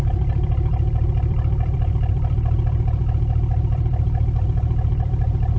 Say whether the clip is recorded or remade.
remade